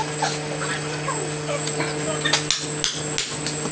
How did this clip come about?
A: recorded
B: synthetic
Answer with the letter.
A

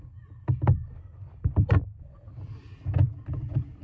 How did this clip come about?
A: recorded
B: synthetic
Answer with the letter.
A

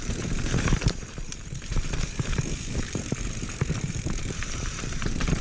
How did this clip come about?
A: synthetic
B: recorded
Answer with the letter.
A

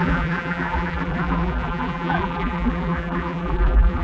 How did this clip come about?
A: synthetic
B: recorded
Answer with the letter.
A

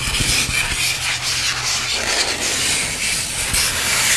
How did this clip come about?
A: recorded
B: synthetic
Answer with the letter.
A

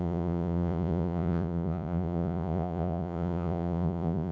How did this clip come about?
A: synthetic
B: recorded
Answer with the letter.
A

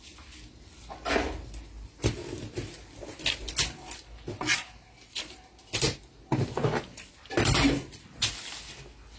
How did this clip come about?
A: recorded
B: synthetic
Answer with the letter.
A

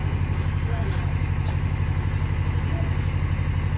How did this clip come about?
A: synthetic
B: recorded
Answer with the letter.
B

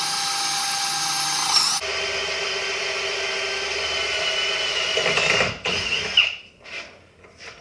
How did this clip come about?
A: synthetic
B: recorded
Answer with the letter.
B